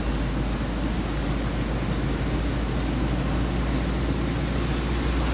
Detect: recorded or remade recorded